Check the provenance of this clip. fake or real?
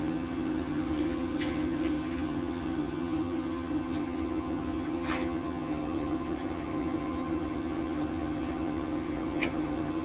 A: fake